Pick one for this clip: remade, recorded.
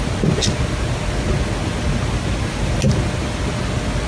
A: recorded